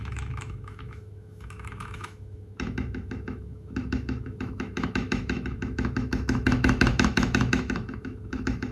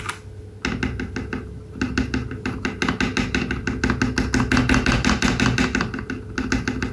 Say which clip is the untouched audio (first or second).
second